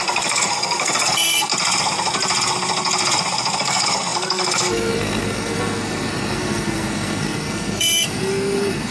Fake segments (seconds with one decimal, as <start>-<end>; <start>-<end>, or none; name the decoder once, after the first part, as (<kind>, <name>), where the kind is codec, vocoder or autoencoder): 0.0-1.5 (codec, SNAC); 3.6-8.9